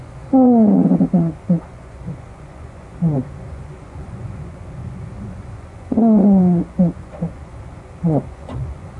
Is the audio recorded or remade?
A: remade